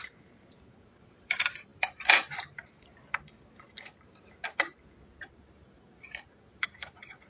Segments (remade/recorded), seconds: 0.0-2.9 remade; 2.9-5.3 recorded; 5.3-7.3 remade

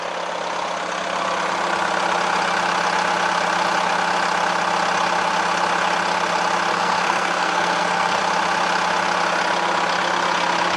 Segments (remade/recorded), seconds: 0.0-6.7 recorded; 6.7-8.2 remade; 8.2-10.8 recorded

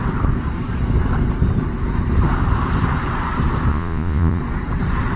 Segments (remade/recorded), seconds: 0.0-3.7 recorded; 3.7-4.4 remade; 4.4-5.2 recorded

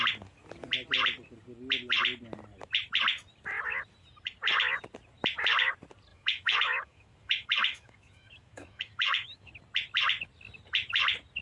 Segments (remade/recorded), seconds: 0.0-6.1 recorded; 6.1-9.5 remade; 9.5-11.4 recorded

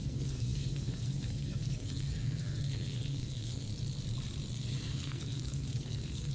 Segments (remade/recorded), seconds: 0.0-3.7 remade; 3.7-4.5 recorded; 4.5-6.3 remade

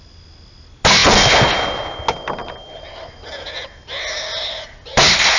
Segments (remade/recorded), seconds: 0.0-5.4 recorded

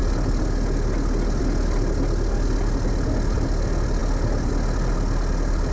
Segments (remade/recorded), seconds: 0.0-5.7 recorded

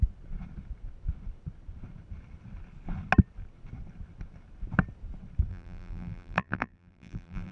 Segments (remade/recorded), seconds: 0.0-5.5 recorded; 5.5-7.5 remade